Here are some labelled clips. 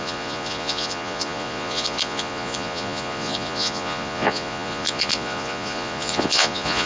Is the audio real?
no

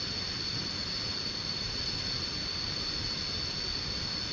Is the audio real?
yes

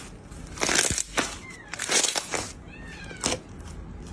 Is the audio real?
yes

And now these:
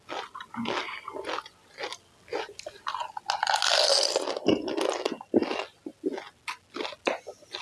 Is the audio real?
yes